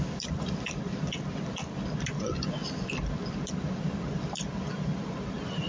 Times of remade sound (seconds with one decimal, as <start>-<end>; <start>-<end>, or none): none